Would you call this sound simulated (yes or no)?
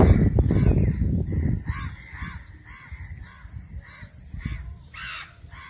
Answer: no